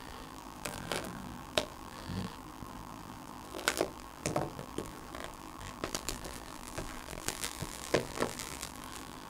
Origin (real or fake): fake